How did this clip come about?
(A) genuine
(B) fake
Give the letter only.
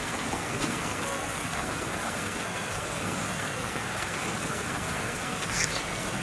B